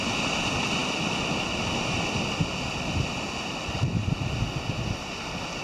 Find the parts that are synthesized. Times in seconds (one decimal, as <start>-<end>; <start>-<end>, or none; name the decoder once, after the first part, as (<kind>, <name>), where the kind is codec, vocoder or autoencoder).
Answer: none